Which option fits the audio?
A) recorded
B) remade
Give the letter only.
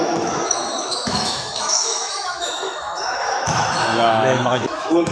B